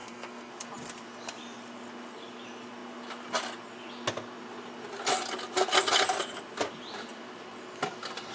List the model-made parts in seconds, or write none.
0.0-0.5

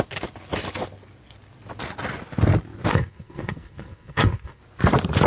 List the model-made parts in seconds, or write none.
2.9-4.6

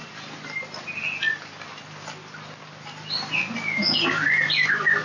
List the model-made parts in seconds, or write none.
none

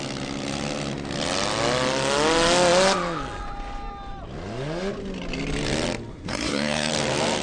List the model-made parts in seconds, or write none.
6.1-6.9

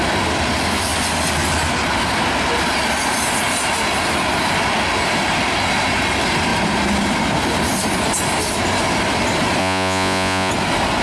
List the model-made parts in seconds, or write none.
9.6-10.5